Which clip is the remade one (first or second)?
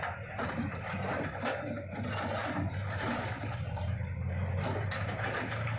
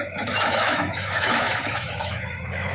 second